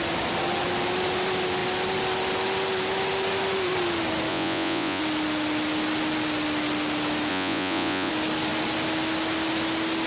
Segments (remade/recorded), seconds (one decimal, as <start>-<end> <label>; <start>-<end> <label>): 0.0-4.3 recorded; 4.3-5.0 remade; 5.0-7.3 recorded; 7.3-8.1 remade; 8.1-10.1 recorded

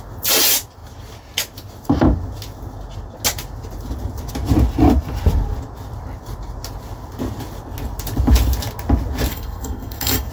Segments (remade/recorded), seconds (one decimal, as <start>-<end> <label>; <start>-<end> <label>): 0.0-9.3 recorded; 9.3-10.3 remade